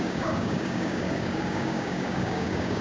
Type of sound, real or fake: fake